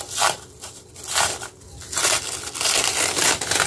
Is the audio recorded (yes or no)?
yes